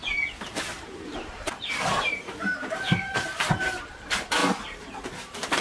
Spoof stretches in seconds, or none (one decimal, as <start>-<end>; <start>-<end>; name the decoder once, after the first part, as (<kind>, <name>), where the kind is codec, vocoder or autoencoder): 0.7-3.9 (vocoder, BigVGAN v2); 4.4-5.0